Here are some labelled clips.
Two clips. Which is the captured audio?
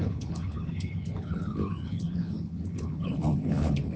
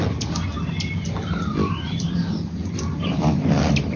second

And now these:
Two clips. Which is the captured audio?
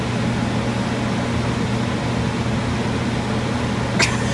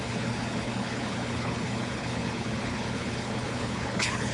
first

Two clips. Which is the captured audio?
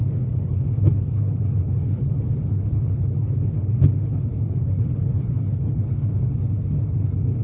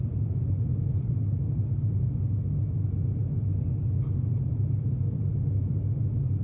second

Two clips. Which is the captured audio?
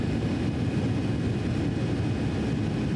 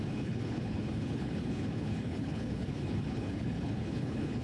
first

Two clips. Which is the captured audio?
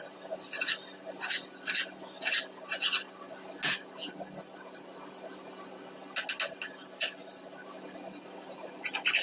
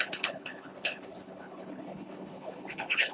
first